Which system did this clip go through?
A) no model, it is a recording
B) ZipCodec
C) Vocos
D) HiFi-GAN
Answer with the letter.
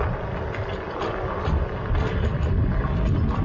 A